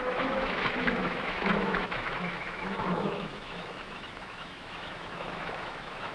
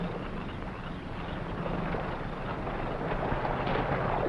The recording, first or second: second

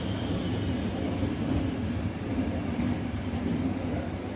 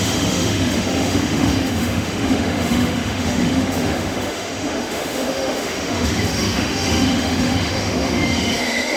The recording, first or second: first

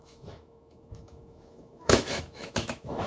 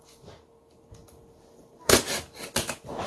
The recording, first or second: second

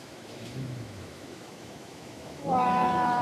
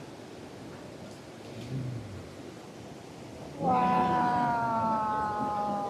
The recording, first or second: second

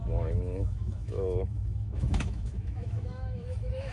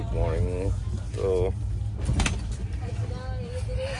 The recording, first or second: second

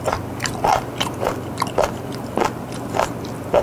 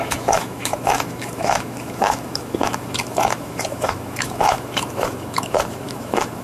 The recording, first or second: first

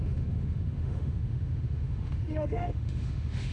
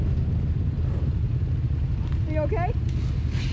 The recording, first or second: second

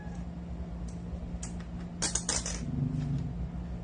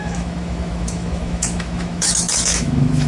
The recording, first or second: first